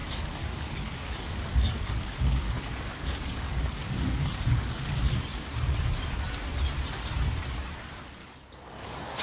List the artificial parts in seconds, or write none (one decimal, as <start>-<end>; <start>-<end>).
0.0-5.2; 8.2-9.2